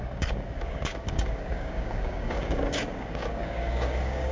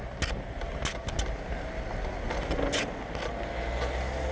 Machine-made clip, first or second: first